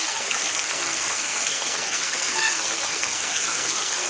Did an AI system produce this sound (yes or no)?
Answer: yes